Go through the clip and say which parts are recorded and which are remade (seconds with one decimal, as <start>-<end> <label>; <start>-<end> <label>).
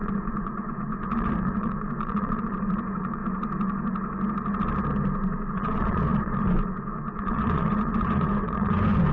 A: 0.0-3.2 remade; 3.2-5.5 recorded; 5.5-9.1 remade